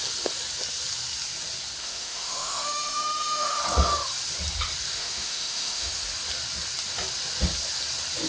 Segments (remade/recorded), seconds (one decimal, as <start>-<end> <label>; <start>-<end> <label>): 0.0-1.8 recorded; 1.8-3.6 remade; 3.6-4.9 recorded; 4.9-5.9 remade; 5.9-8.3 recorded